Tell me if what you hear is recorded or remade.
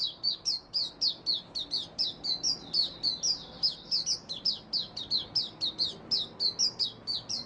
recorded